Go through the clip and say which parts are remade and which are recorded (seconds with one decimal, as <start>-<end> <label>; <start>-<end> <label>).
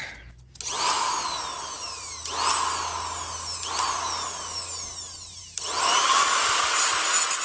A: 0.0-7.4 recorded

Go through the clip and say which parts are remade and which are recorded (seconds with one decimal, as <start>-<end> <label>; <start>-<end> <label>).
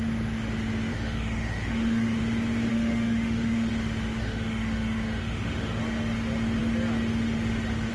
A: 0.0-0.9 recorded; 0.9-2.2 remade; 2.2-2.7 recorded; 2.7-3.7 remade; 3.7-4.2 recorded; 4.2-5.8 remade; 5.8-7.9 recorded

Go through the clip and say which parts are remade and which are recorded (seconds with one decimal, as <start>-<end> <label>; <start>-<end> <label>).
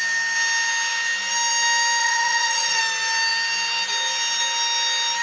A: 0.0-2.0 recorded; 2.0-2.8 remade; 2.8-5.2 recorded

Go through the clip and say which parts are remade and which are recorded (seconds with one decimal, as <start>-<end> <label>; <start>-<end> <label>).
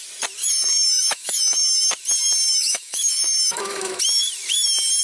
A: 0.0-0.4 recorded; 0.4-1.9 remade; 1.9-2.5 recorded; 2.5-4.0 remade; 4.0-5.0 recorded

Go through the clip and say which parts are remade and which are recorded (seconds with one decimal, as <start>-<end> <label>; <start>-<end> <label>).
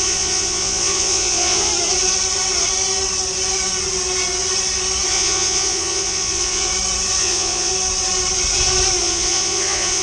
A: 0.0-1.7 remade; 1.7-5.1 recorded; 5.1-6.7 remade; 6.7-7.2 recorded; 7.2-7.7 remade; 7.7-9.0 recorded; 9.0-10.0 remade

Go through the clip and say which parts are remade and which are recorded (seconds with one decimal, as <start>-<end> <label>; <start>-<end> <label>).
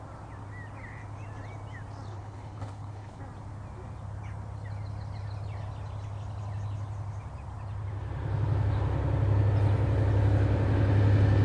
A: 0.0-2.1 recorded; 2.1-3.2 remade; 3.2-11.4 recorded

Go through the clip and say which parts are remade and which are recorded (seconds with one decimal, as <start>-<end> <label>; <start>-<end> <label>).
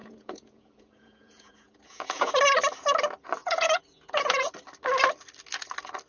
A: 0.0-2.3 remade; 2.3-3.4 recorded; 3.4-4.5 remade; 4.5-6.1 recorded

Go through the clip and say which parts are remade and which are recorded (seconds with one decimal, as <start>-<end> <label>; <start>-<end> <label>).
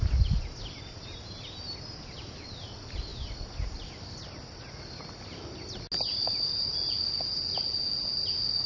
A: 0.0-8.7 recorded